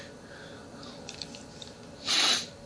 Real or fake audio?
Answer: real